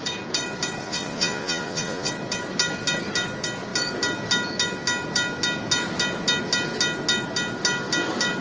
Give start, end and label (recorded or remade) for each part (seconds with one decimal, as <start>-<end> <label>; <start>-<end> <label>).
0.0-0.8 recorded; 0.8-2.1 remade; 2.1-8.4 recorded